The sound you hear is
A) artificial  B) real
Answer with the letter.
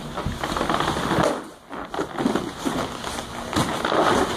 B